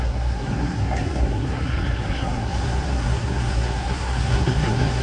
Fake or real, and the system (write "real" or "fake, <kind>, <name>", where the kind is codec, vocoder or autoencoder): fake, codec, SNAC